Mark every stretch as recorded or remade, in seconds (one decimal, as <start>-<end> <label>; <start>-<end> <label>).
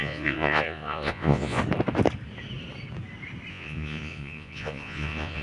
0.0-1.6 remade; 1.6-3.5 recorded; 3.5-5.4 remade